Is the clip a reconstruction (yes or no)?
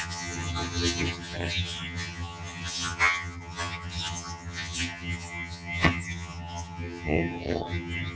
yes